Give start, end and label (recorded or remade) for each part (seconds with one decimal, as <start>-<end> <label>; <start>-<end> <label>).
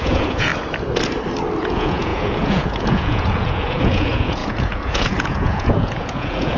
0.0-0.5 remade; 0.5-1.6 recorded; 1.6-6.6 remade